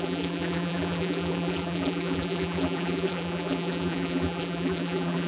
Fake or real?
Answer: fake